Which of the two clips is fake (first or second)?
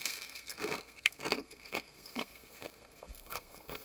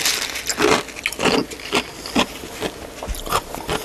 first